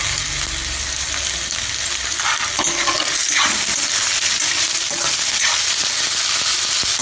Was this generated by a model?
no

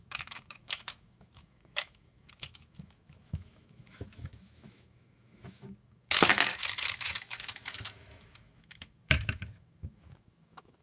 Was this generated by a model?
yes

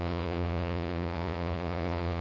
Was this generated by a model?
yes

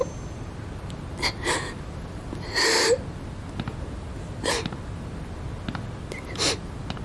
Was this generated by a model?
no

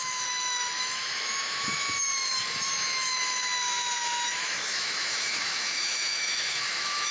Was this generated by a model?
yes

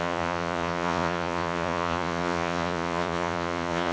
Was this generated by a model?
yes